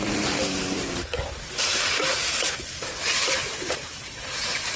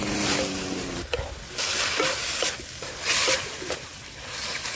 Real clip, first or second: second